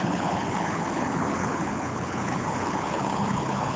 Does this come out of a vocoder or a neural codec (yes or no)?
yes